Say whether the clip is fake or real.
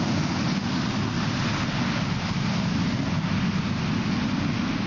real